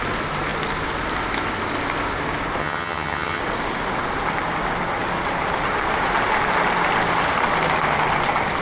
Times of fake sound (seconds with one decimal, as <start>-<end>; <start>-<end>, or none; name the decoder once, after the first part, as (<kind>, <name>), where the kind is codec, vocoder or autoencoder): 2.6-3.4 (vocoder, HiFi-GAN)